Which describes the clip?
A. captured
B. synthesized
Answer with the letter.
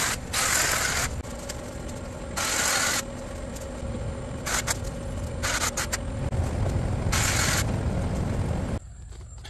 A